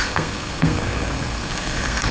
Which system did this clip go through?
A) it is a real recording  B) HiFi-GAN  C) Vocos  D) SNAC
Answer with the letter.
D